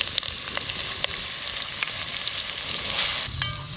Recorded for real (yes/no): yes